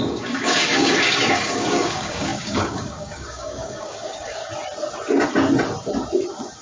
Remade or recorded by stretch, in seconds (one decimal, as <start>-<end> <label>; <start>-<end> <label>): 0.0-4.4 remade; 4.4-6.6 recorded